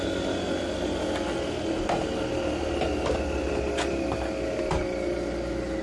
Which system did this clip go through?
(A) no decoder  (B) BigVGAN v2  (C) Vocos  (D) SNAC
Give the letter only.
A